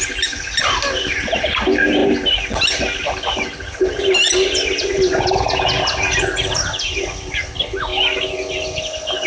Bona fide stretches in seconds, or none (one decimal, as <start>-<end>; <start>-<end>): 0.0-9.3